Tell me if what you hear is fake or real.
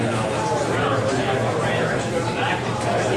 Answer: real